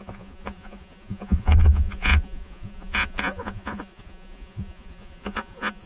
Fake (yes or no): yes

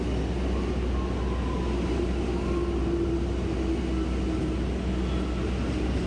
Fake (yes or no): no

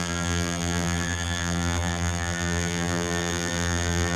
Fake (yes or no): yes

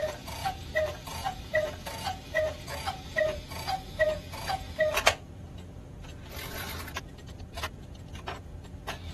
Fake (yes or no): yes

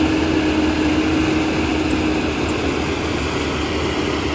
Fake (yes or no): no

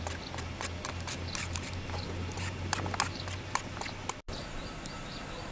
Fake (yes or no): no